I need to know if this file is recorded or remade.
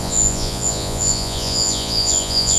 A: remade